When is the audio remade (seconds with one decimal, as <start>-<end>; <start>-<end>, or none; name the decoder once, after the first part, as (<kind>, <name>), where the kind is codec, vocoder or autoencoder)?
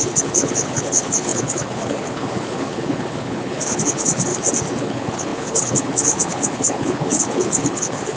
0.0-4.3 (codec, HILCodec); 4.8-8.2